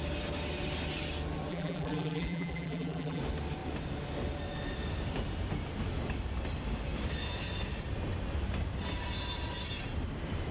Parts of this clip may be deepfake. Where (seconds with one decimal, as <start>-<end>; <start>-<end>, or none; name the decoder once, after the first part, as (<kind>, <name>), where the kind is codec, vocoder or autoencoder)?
1.5-3.2 (vocoder, BigVGAN v2)